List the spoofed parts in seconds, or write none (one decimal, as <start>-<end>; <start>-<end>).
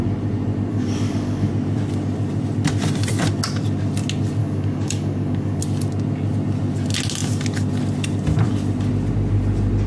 0.7-1.5; 4.4-5.6